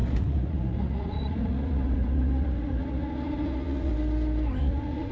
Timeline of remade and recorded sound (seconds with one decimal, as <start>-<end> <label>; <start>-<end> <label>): 0.0-3.9 remade; 3.9-4.6 recorded; 4.6-5.1 remade